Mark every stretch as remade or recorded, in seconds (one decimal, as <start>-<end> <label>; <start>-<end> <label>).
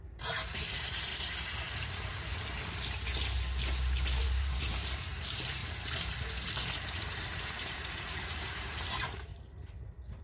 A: 0.0-1.1 remade; 1.1-1.6 recorded; 1.6-2.1 remade; 2.1-4.2 recorded; 4.2-5.6 remade; 5.6-7.2 recorded; 7.2-10.2 remade